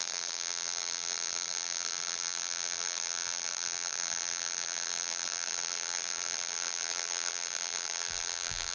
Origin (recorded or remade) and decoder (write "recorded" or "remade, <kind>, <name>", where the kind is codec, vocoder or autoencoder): remade, vocoder, BigVGAN v2